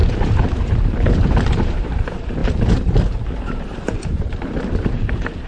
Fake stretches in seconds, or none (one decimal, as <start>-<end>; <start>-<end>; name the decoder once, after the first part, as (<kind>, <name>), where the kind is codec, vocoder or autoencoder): 0.6-5.5 (vocoder, BigVGAN v2)